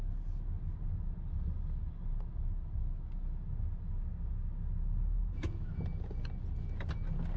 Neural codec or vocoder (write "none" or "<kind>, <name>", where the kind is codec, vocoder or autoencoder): none